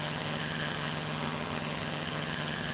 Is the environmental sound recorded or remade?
remade